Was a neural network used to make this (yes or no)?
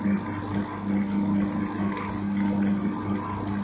no